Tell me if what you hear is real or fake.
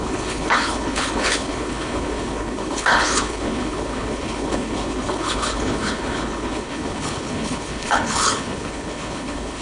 fake